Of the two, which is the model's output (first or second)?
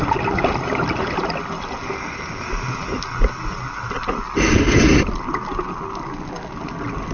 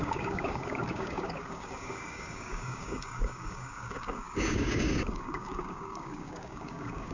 second